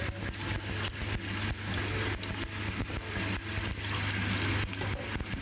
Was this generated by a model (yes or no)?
no